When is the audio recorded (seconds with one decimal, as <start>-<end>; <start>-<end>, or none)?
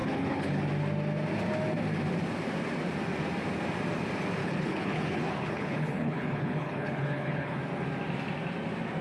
0.6-4.4; 7.6-9.0